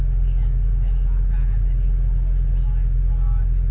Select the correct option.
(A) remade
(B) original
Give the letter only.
B